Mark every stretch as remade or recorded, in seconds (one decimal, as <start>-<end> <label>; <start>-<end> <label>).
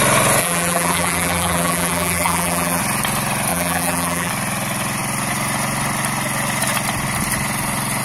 0.0-0.4 recorded; 0.4-2.8 remade; 2.8-3.5 recorded; 3.5-4.3 remade; 4.3-8.0 recorded